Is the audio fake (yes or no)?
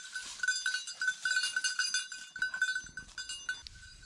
no